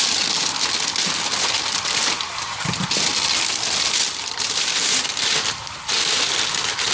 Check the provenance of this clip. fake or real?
real